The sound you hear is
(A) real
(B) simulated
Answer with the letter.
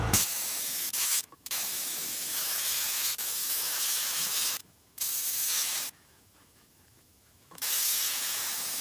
B